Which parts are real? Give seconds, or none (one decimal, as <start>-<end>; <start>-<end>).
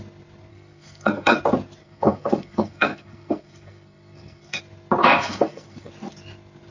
0.0-0.5; 1.4-1.8; 4.6-5.0; 5.9-6.7